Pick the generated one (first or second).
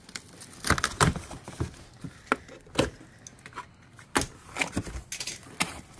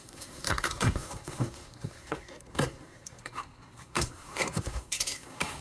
second